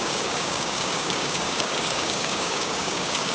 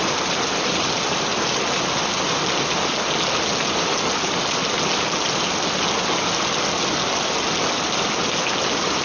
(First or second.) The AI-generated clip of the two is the first